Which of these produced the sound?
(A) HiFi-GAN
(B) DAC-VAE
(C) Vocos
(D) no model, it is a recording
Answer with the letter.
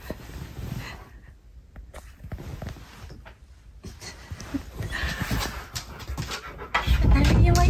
D